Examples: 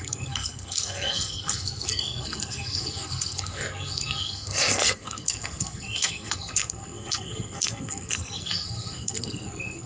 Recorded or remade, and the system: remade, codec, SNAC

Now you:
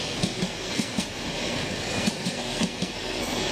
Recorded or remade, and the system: remade, codec, SNAC